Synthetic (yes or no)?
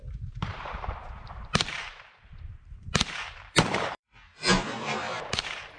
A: yes